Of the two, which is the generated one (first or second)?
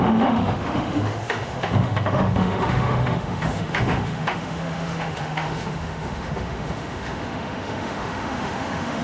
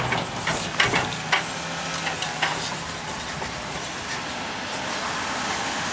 first